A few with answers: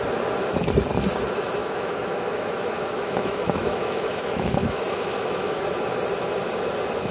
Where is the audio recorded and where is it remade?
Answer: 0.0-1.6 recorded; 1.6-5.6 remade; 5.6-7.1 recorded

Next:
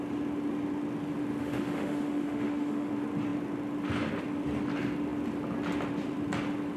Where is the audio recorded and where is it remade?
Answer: 0.0-1.4 recorded; 1.4-2.9 remade; 2.9-6.8 recorded

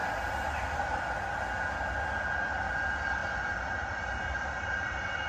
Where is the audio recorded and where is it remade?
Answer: 0.0-5.3 recorded

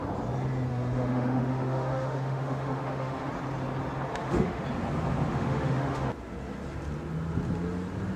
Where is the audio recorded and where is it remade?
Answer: 0.0-0.7 recorded; 0.7-3.3 remade; 3.3-4.1 recorded; 4.1-4.6 remade; 4.6-5.3 recorded; 5.3-6.1 remade; 6.1-8.2 recorded

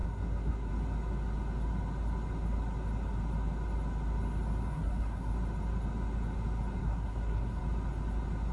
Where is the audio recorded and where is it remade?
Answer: 0.0-0.7 remade; 0.7-4.7 recorded; 4.7-5.3 remade; 5.3-6.8 recorded; 6.8-7.6 remade; 7.6-8.5 recorded

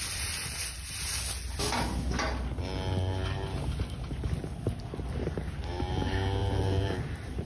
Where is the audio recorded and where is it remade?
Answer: 0.0-6.4 recorded; 6.4-7.4 remade